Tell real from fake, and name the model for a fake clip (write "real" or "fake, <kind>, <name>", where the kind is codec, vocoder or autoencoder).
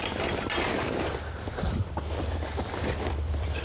fake, vocoder, BigVGAN v2